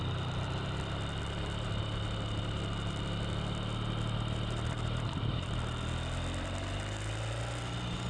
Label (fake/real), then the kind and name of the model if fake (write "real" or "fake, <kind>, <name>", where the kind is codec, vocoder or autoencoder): real